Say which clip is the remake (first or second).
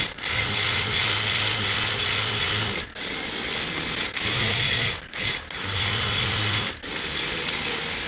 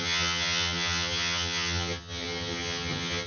second